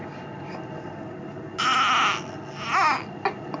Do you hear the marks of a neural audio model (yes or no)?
no